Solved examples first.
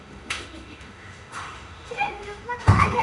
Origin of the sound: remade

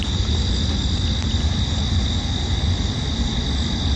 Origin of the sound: recorded